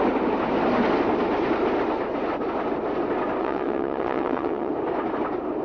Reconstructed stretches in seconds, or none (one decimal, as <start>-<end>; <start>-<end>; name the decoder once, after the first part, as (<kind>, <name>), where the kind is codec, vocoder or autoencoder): 3.4-4.7 (vocoder, WaveNeXt)